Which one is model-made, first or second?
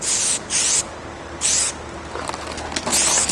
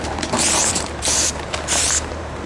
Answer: second